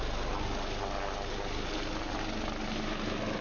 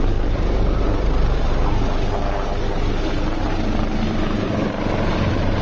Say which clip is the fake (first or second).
second